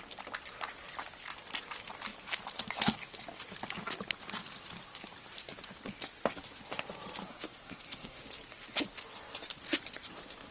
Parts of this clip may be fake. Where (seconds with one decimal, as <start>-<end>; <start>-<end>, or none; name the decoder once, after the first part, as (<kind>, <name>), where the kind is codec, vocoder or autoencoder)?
7.2-8.2 (codec, SNAC)